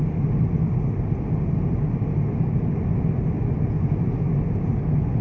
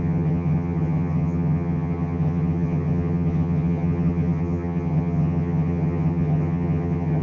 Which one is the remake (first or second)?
second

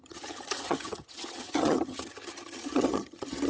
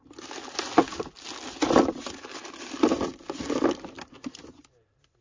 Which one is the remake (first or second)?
first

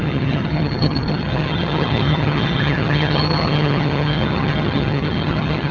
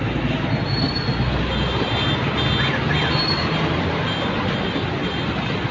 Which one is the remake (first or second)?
first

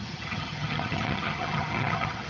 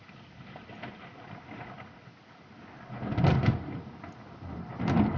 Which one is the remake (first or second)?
first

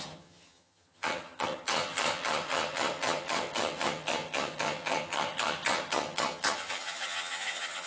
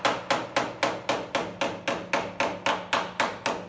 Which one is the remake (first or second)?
first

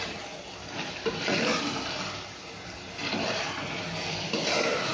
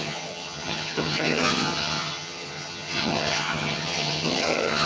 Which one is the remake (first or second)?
second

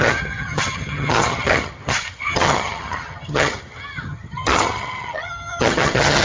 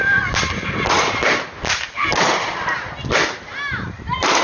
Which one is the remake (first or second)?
first